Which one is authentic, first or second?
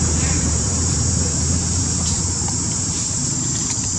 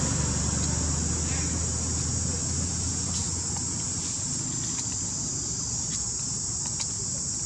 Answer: second